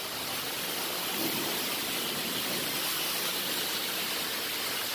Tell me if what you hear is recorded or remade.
recorded